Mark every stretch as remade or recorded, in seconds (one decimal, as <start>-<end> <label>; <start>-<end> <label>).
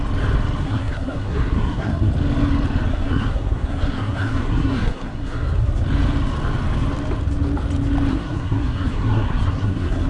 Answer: 0.0-0.6 recorded; 0.6-2.1 remade; 2.1-2.9 recorded; 2.9-5.7 remade; 5.7-8.1 recorded; 8.1-10.1 remade